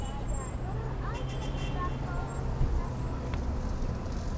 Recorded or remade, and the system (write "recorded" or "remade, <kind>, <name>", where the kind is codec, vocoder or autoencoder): recorded